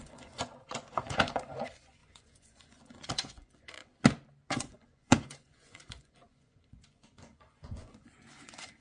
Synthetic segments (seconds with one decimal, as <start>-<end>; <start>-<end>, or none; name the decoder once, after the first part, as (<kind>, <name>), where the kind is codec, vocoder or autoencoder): 0.0-3.9 (vocoder, Vocos); 4.5-8.8